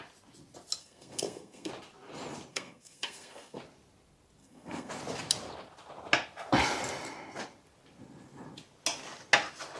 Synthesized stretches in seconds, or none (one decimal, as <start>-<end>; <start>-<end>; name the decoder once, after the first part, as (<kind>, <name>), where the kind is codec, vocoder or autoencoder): 0.8-1.7 (codec, SNAC); 2.5-3.6; 4.4-4.9